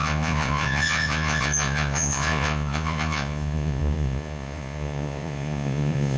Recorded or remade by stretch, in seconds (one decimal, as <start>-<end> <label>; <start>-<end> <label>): 0.0-6.2 remade